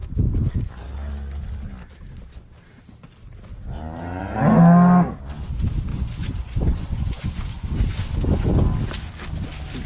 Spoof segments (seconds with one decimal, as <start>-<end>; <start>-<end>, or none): 5.9-7.8